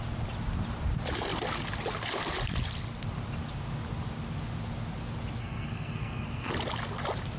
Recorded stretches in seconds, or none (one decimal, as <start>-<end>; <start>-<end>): 0.0-5.4; 6.5-7.4

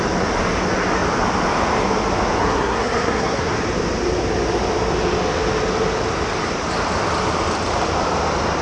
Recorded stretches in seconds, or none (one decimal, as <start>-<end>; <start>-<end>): 0.0-2.4; 3.5-8.6

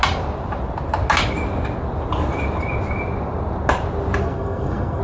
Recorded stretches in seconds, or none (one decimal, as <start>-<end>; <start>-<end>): 0.0-4.2